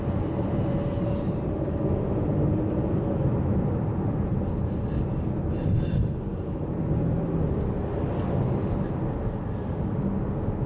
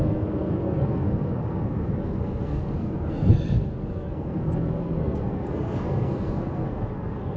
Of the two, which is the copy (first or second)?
second